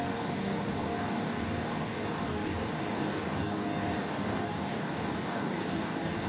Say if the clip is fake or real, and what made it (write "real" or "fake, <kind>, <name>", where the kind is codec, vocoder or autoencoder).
fake, codec, DAC